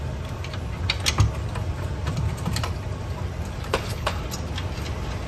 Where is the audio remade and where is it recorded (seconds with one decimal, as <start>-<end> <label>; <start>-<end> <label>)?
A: 0.0-3.7 recorded; 3.7-4.2 remade; 4.2-5.3 recorded